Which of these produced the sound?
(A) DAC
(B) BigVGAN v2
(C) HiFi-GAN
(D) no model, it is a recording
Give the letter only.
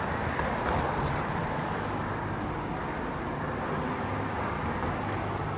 D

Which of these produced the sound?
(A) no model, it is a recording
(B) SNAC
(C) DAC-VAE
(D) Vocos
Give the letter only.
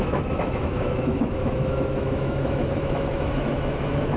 C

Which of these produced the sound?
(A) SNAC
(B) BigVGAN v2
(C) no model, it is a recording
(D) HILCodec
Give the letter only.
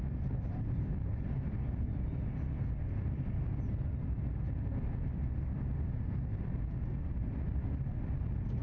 C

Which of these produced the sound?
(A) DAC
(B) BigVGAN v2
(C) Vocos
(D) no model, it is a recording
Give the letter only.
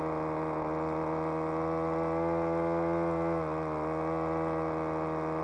D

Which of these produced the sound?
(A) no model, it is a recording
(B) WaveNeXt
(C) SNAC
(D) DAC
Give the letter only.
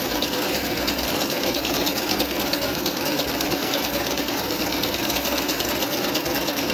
C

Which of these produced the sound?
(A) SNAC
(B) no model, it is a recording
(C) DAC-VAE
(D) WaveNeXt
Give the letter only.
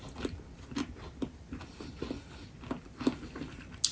B